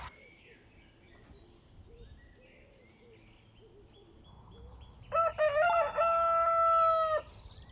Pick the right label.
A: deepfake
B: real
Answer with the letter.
B